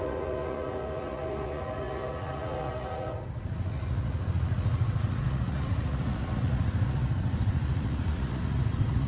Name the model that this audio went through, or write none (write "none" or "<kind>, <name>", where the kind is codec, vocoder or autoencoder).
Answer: vocoder, Vocos